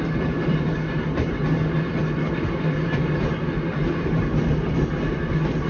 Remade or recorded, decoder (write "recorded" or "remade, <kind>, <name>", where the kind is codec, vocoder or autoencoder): recorded